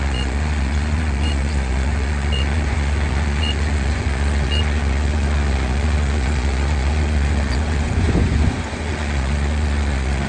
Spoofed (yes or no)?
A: yes